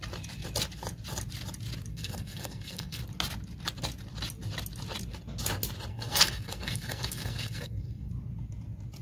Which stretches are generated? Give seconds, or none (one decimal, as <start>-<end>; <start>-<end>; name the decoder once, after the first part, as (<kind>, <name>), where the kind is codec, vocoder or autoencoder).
1.9-3.0 (codec, SNAC); 5.9-8.1